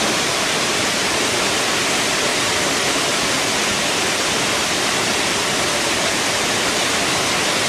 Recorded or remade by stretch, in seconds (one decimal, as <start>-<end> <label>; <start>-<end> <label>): 0.0-2.3 remade; 2.3-4.0 recorded; 4.0-7.7 remade